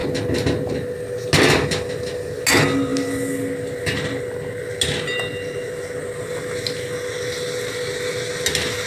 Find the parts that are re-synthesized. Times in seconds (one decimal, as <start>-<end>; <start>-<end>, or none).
none